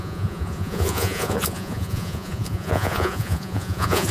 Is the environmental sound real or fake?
fake